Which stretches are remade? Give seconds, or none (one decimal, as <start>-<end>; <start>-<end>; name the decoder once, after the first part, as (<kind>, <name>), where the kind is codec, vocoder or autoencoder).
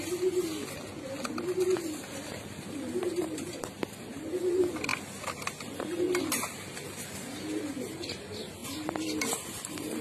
0.0-0.5 (vocoder, BigVGAN v2); 1.3-4.9; 6.0-8.6; 9.2-10.0